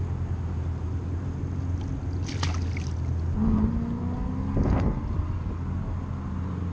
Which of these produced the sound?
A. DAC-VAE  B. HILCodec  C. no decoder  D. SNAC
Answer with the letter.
C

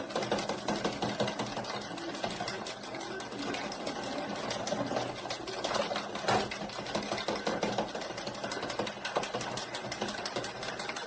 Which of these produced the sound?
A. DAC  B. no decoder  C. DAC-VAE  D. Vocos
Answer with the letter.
B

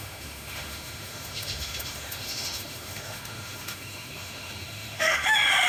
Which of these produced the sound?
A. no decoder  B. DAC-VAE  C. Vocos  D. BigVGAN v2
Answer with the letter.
B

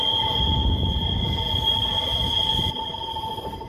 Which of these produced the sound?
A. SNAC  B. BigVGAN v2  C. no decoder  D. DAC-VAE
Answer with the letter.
C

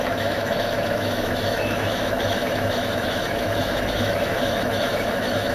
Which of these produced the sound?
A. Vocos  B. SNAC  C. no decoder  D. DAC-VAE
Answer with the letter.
D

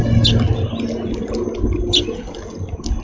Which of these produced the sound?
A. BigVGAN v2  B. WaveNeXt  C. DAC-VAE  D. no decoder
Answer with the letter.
D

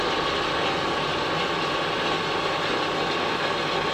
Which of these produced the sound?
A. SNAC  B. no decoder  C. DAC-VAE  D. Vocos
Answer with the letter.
B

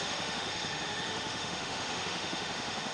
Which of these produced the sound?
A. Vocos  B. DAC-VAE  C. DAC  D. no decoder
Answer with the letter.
B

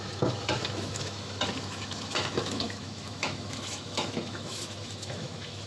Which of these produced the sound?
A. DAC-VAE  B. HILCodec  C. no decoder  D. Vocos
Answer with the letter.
A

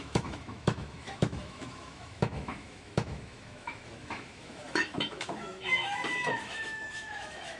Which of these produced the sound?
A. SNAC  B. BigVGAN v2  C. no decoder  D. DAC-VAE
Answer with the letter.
D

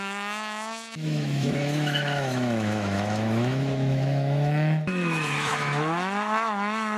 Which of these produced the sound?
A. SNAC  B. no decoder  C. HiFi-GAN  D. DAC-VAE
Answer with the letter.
D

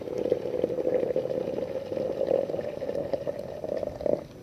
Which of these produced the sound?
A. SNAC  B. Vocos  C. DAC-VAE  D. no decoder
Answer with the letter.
D